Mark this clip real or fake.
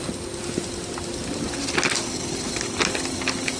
real